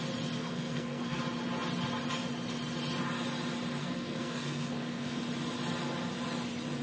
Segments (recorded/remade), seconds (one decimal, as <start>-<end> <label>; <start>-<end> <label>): 0.0-0.4 recorded; 0.4-1.2 remade; 1.2-3.8 recorded; 3.8-5.2 remade; 5.2-6.8 recorded